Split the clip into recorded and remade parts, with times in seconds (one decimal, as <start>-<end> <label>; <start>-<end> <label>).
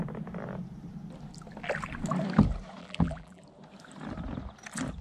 0.0-2.8 recorded; 2.8-3.4 remade; 3.4-5.0 recorded